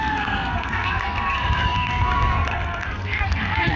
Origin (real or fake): fake